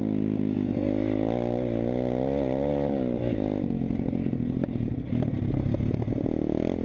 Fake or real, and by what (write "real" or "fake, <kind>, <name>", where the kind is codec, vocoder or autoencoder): real